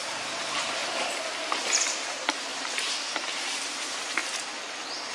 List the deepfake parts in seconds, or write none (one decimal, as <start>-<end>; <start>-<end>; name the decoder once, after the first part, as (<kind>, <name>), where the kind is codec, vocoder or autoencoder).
0.0-0.8 (vocoder, BigVGAN v2); 1.6-4.2